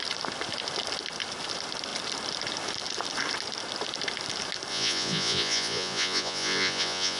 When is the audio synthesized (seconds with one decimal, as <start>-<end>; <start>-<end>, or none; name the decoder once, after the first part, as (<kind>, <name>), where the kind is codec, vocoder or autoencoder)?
4.7-7.2 (vocoder, Vocos)